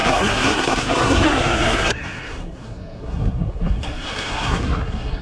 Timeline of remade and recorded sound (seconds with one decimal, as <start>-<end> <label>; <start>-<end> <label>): 0.0-5.2 remade